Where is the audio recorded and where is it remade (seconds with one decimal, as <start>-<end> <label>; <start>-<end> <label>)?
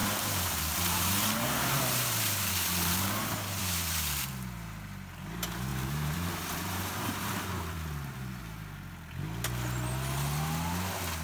0.0-2.5 remade; 2.5-3.6 recorded; 3.6-4.3 remade; 4.3-5.7 recorded; 5.7-8.4 remade; 8.4-11.2 recorded